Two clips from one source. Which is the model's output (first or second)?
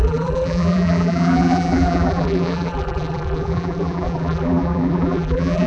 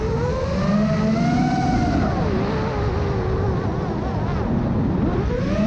first